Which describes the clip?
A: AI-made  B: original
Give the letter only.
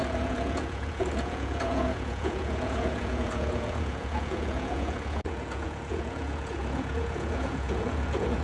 A